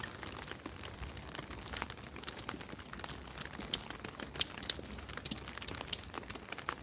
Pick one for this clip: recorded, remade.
recorded